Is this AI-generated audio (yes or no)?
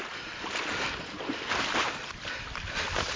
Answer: no